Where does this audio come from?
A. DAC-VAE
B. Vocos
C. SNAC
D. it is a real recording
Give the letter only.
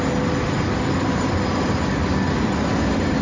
D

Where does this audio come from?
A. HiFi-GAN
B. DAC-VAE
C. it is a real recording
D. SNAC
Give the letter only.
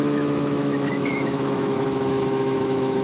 B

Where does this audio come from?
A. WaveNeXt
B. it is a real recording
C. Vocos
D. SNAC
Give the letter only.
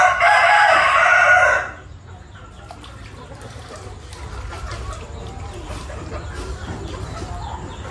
B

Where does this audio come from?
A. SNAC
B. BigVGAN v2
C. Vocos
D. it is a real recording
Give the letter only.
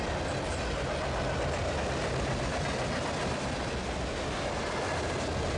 D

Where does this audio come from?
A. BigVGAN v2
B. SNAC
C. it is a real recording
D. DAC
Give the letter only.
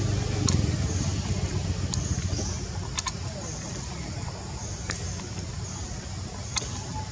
C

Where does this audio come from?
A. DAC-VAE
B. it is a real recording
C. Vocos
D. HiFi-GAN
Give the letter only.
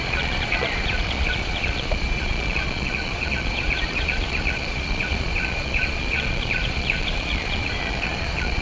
C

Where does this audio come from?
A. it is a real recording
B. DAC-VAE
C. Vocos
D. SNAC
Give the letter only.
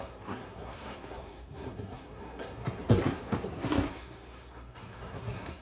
D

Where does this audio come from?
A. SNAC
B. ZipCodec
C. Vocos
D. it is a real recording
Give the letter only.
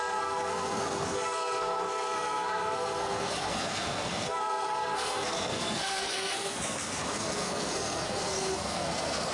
A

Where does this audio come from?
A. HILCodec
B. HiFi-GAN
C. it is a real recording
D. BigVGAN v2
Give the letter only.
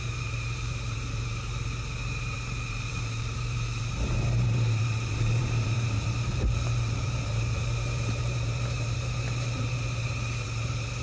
D